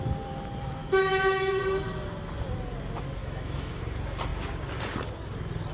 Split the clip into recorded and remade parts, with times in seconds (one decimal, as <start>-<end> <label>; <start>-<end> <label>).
0.0-0.8 recorded; 0.8-1.6 remade; 1.6-3.2 recorded; 3.2-3.8 remade; 3.8-5.7 recorded